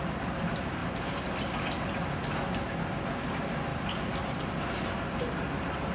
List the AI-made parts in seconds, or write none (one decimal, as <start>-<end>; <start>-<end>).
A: 3.7-5.2